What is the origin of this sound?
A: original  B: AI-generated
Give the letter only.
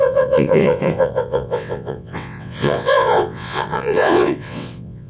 B